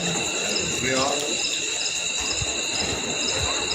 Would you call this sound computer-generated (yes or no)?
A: no